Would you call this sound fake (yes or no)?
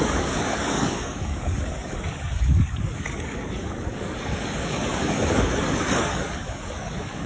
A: yes